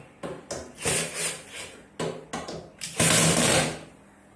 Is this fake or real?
real